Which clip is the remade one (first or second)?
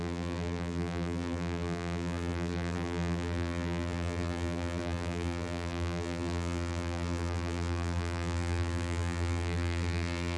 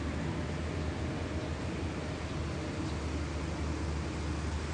first